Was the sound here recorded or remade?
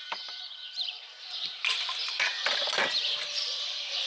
remade